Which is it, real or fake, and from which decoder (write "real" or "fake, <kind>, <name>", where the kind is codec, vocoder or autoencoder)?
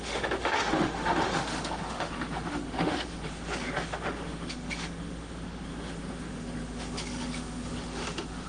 fake, autoencoder, DAC-VAE